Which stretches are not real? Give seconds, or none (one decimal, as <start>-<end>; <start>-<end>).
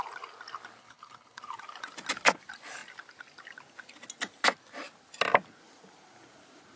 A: 0.8-1.4